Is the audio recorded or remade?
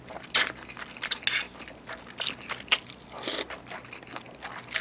recorded